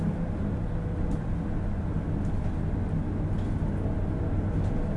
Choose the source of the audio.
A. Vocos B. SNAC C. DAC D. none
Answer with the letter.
D